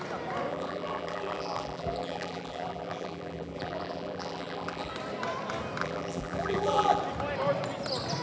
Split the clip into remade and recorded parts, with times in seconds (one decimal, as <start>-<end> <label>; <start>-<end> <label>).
0.0-0.5 recorded; 0.5-4.9 remade; 4.9-5.8 recorded; 5.8-7.0 remade; 7.0-8.2 recorded